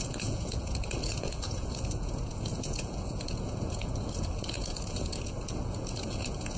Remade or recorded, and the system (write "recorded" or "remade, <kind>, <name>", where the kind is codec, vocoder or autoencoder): remade, vocoder, Vocos